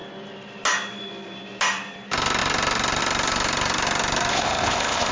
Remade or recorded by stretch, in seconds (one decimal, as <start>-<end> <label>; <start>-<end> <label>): 0.0-4.3 recorded; 4.3-5.1 remade